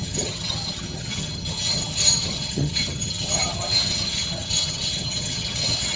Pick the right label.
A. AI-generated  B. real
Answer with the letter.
A